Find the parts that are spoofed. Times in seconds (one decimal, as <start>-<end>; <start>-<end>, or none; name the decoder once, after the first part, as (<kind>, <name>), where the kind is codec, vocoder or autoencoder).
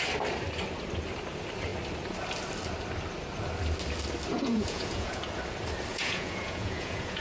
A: 4.3-5.2 (vocoder, Vocos); 5.9-7.2